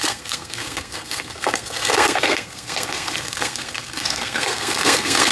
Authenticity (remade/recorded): remade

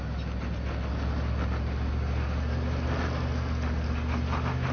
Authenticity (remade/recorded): recorded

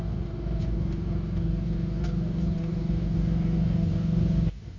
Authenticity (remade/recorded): remade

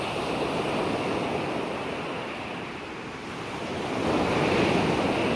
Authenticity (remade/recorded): recorded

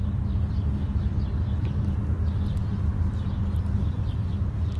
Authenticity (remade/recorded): recorded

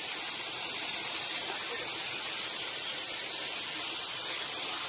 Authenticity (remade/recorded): remade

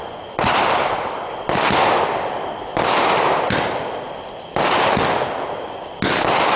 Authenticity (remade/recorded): recorded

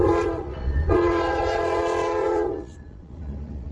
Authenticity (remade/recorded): remade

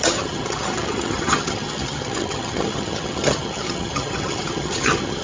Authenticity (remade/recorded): remade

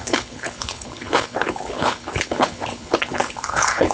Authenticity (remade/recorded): remade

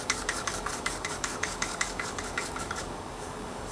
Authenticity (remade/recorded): remade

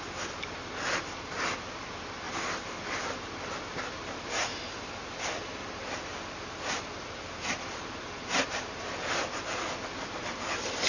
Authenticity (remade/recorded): recorded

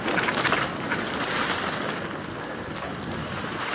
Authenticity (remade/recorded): recorded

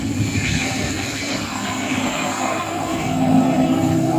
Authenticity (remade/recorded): remade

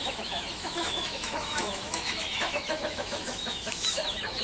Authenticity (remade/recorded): remade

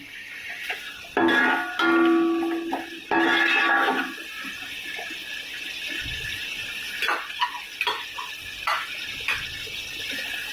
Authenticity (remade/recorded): recorded